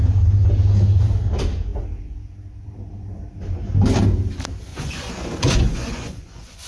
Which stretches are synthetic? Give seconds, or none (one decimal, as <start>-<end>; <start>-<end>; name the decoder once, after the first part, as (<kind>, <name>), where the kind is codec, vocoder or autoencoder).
4.7-6.7 (vocoder, Vocos)